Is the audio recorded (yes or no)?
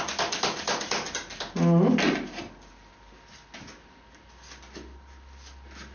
yes